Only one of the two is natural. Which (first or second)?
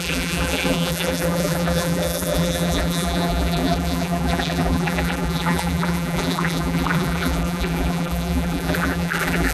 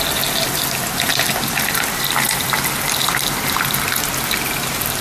second